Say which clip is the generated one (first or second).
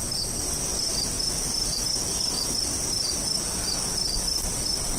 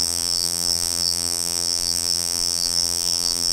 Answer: second